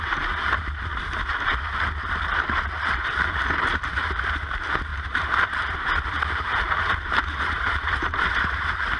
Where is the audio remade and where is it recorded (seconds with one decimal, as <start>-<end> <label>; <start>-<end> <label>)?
0.0-0.9 remade; 0.9-3.8 recorded; 3.8-9.0 remade